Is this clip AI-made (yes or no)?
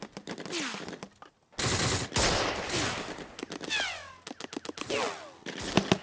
no